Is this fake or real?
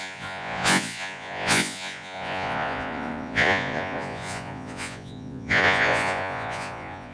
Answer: fake